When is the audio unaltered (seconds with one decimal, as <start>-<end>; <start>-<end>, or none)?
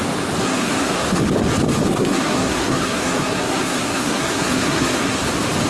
0.0-0.4; 1.2-1.9; 5.3-5.7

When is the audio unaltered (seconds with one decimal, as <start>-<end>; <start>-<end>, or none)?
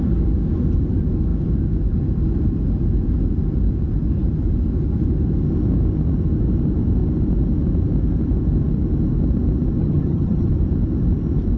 0.0-9.8; 10.5-11.6